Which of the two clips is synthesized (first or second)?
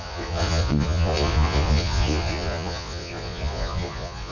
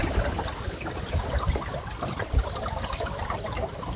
first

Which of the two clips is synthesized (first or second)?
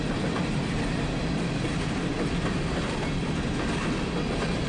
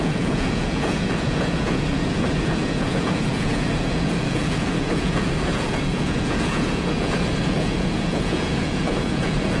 second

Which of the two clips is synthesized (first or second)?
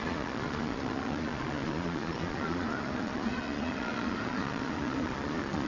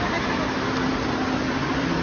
first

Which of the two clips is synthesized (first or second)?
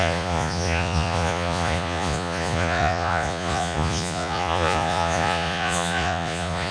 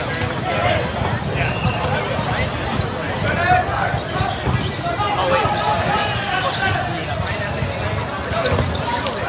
first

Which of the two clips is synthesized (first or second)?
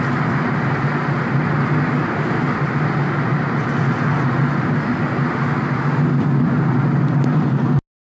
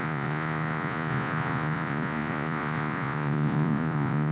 second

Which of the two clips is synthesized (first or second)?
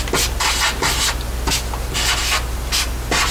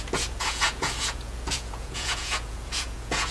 second